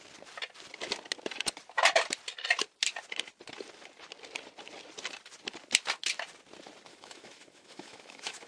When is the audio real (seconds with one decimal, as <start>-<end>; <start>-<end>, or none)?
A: 0.0-6.9